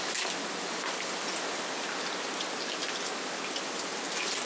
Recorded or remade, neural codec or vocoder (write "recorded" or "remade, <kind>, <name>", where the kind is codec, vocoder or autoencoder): recorded